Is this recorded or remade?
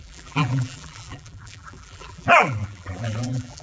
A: remade